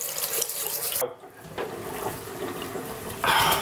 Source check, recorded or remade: recorded